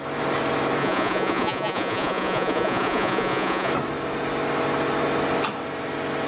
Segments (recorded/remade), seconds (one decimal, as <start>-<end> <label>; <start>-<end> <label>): 0.0-0.8 recorded; 0.8-3.7 remade; 3.7-6.3 recorded